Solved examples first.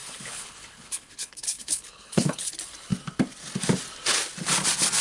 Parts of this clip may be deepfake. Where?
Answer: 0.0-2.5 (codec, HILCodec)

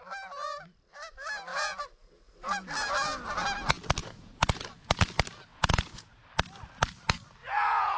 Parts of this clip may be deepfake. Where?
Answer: 1.5-2.7 (vocoder, Vocos); 4.0-5.0; 5.5-6.2; 7.4-8.0

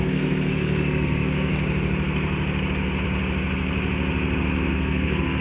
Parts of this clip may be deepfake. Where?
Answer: 0.0-1.5 (codec, SNAC); 4.7-5.4

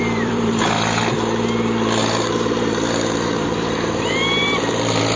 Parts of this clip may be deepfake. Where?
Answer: 0.0-1.0 (vocoder, BigVGAN v2); 2.0-5.2

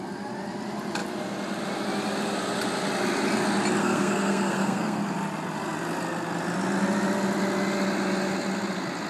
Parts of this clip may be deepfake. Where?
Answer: 3.8-5.0 (codec, SNAC)